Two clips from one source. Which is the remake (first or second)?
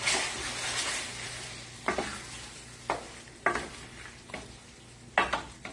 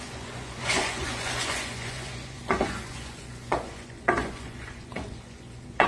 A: second